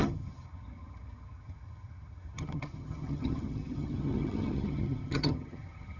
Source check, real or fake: fake